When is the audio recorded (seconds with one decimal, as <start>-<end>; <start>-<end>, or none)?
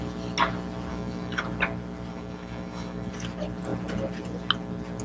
0.0-0.9; 1.4-2.1; 3.1-5.0